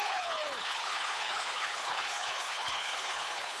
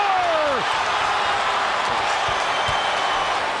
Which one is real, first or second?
second